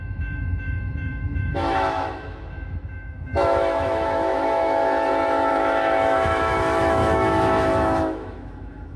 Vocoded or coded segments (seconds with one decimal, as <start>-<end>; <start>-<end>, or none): 0.0-4.8; 5.5-9.0